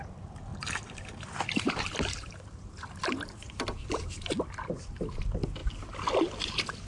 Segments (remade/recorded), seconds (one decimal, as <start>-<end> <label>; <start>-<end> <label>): 0.0-5.6 remade; 5.6-6.4 recorded; 6.4-6.9 remade